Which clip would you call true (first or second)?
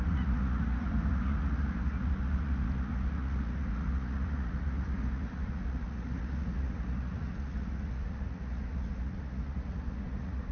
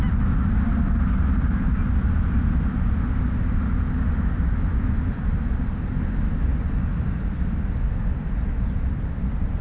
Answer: second